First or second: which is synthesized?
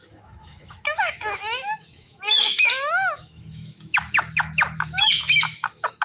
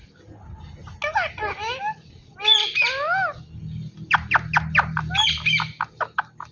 first